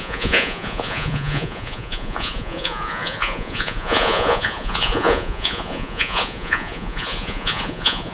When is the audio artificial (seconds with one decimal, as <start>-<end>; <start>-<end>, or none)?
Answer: 0.0-8.1